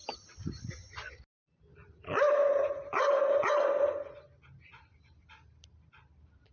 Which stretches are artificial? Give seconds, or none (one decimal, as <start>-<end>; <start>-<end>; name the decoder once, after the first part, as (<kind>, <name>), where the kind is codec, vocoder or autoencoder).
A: 2.4-3.5 (vocoder, Vocos)